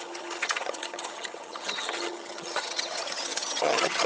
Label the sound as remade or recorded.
remade